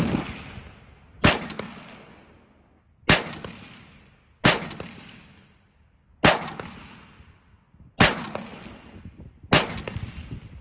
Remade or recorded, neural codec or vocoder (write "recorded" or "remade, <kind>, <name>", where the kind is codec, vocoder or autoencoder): recorded